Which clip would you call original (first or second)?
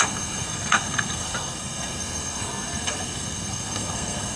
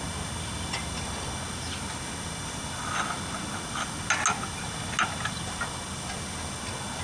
second